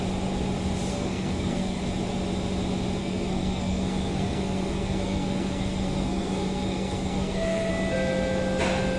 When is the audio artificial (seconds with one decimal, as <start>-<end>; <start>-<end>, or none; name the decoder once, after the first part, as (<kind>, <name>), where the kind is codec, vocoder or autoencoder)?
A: 0.9-1.8 (codec, SNAC); 3.0-7.7